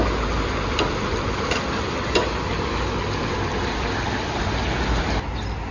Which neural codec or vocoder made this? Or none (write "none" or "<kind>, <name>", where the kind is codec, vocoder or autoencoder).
none